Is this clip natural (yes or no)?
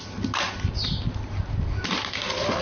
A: yes